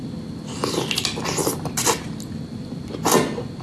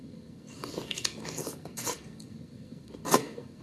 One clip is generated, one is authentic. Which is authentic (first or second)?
first